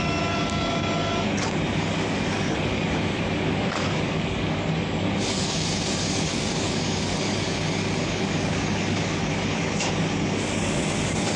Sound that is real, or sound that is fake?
fake